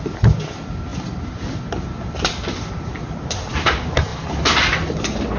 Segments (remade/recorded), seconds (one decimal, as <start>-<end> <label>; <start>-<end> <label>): 0.0-5.4 recorded